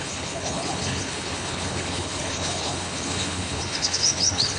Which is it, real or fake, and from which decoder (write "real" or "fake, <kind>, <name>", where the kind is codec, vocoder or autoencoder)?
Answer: fake, codec, HILCodec